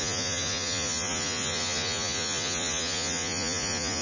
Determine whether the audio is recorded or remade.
remade